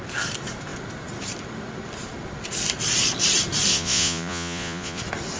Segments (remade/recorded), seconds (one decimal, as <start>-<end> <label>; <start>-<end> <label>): 0.0-3.7 recorded; 3.7-5.0 remade; 5.0-5.4 recorded